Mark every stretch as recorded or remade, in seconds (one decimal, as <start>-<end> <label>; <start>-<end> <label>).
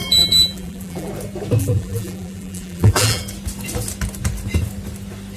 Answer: 0.0-1.1 remade; 1.1-1.6 recorded; 1.6-3.2 remade; 3.2-5.4 recorded